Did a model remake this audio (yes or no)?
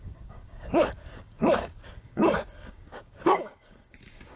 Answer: yes